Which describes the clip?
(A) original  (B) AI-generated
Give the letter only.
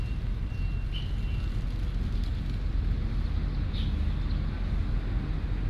A